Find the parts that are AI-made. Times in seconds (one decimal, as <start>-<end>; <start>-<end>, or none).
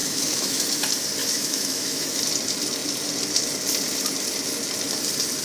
0.0-0.6; 1.2-2.2